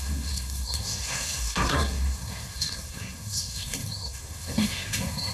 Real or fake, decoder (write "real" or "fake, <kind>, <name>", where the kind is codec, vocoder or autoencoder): fake, codec, SNAC